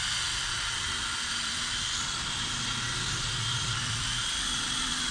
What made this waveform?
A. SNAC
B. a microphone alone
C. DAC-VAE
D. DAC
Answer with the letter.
B